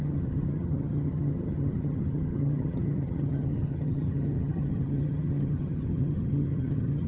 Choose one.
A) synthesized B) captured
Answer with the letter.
A